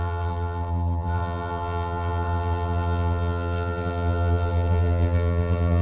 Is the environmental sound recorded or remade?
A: remade